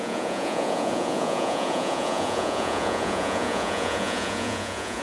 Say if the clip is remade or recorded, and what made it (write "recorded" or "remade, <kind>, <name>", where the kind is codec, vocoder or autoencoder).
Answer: remade, vocoder, Vocos